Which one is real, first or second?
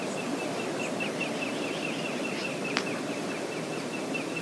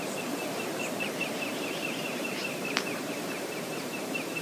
first